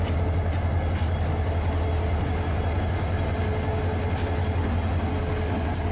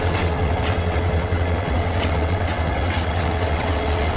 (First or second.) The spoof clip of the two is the second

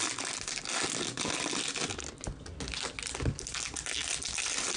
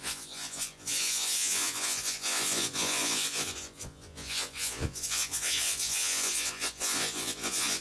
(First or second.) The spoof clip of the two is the second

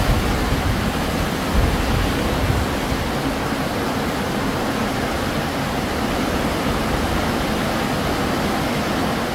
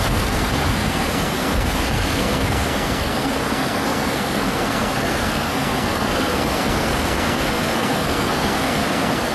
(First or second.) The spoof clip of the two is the second